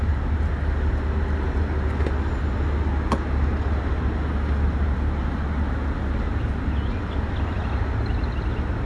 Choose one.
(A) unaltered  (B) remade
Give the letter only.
A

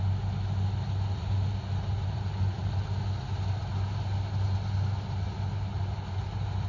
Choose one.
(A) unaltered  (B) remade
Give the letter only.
A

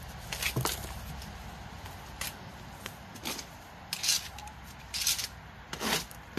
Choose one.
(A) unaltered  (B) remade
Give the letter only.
A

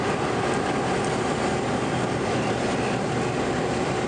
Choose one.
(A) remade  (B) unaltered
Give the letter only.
B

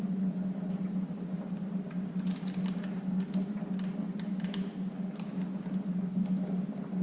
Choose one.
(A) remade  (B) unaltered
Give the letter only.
B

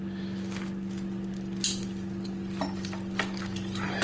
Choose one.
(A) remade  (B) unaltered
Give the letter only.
B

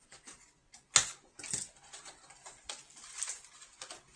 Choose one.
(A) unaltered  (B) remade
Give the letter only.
A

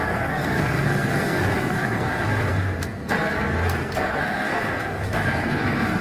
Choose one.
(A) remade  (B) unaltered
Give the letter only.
A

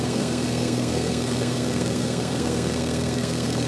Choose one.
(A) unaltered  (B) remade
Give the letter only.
B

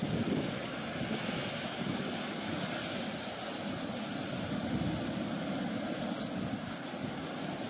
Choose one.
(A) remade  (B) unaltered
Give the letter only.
B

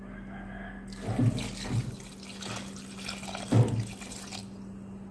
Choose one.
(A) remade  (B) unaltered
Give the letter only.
B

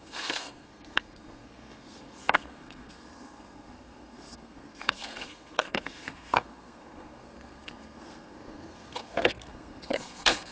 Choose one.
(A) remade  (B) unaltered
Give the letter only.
A